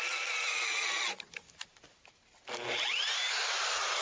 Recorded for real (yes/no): yes